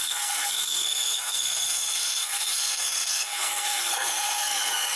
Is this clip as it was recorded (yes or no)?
no